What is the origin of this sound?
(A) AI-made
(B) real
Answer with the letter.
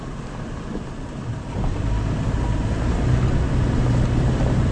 B